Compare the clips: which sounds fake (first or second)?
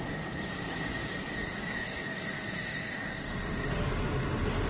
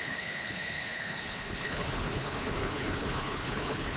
second